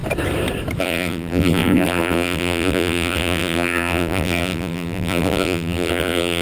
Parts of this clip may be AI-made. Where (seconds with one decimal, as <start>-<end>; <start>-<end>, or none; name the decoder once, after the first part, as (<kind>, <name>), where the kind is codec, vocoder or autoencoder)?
0.8-6.4 (vocoder, BigVGAN v2)